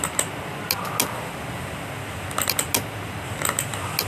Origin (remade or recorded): recorded